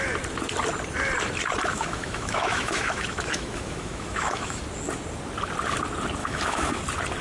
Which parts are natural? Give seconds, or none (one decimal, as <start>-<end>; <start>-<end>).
0.0-1.7; 4.6-6.2; 6.8-7.2